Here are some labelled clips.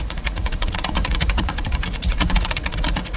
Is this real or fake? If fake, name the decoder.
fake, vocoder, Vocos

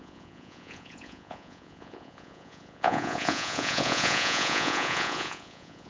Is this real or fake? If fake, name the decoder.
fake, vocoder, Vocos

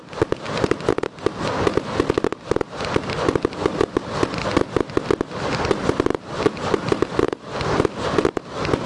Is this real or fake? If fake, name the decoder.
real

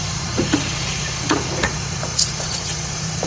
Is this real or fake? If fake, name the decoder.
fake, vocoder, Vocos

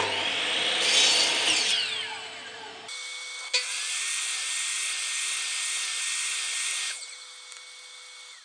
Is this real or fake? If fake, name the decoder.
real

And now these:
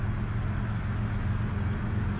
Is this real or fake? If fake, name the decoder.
real